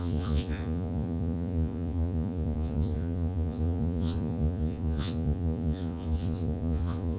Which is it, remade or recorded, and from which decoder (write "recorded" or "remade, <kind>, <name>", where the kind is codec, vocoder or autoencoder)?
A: remade, vocoder, Vocos